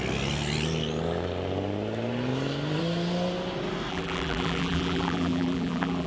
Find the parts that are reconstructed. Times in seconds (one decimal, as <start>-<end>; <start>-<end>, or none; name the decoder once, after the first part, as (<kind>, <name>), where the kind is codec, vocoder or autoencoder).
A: 3.9-6.1 (vocoder, BigVGAN v2)